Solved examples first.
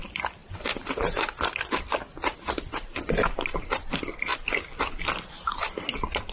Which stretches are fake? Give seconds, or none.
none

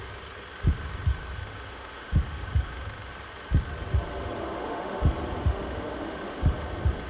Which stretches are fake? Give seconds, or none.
1.4-3.1 (autoencoder, DAC-VAE); 4.4-5.0; 5.4-6.4

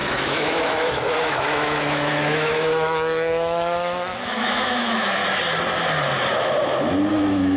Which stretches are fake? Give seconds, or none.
0.0-5.2 (autoencoder, DAC-VAE); 7.1-7.6

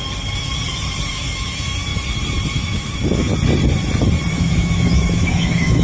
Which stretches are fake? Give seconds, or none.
1.1-1.9 (autoencoder, DAC-VAE); 2.5-3.3; 4.3-5.8